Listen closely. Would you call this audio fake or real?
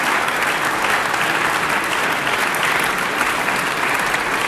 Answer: real